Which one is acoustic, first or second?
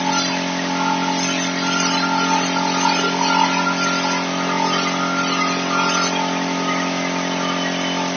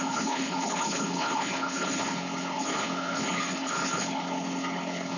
first